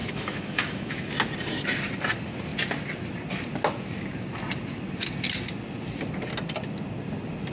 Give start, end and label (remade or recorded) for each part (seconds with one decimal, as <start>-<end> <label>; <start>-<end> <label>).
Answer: 0.0-1.1 remade; 1.1-7.5 recorded

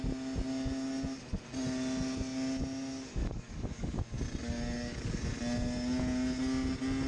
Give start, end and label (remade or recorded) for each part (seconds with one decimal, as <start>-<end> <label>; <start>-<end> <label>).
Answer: 0.0-3.2 recorded; 3.2-4.0 remade; 4.0-4.4 recorded; 4.4-5.2 remade; 5.2-7.1 recorded

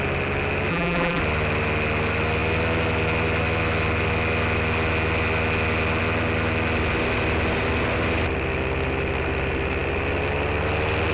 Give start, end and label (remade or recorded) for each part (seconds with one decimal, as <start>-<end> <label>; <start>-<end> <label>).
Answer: 0.0-0.7 recorded; 0.7-1.2 remade; 1.2-11.1 recorded

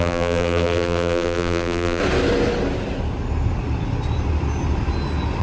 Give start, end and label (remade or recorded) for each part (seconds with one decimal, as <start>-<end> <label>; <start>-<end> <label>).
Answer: 0.0-2.0 remade; 2.0-5.4 recorded

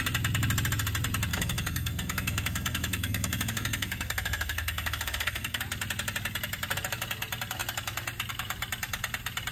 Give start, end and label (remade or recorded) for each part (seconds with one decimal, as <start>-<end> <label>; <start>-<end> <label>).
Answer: 0.0-1.3 recorded; 1.3-5.6 remade; 5.6-9.5 recorded

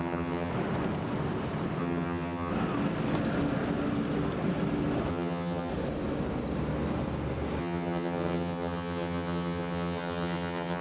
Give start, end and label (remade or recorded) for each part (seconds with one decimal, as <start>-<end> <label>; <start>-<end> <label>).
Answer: 0.0-0.5 remade; 0.5-1.8 recorded; 1.8-2.5 remade; 2.5-5.1 recorded; 5.1-5.7 remade; 5.7-7.6 recorded; 7.6-10.8 remade